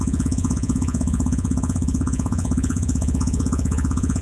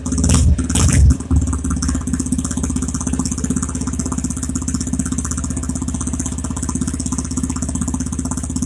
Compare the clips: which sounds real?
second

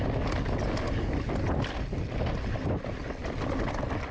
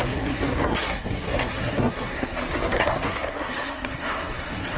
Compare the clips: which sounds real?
first